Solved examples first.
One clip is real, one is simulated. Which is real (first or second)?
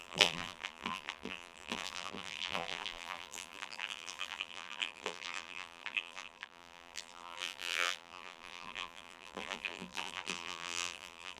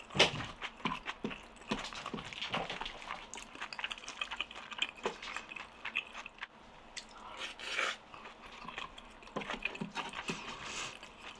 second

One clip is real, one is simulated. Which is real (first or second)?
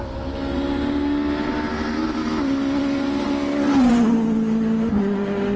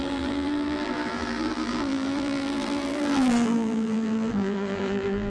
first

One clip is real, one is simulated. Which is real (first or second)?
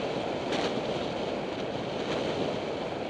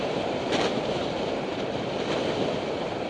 first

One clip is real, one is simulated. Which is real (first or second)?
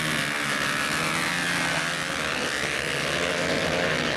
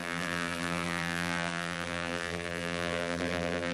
first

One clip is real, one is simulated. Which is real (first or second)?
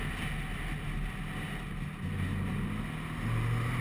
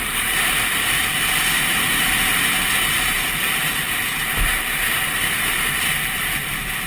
first